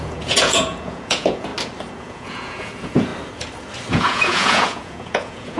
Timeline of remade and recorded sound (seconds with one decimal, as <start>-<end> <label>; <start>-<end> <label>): 0.0-1.5 remade; 1.5-2.0 recorded; 2.0-3.1 remade; 3.1-3.9 recorded; 3.9-5.6 remade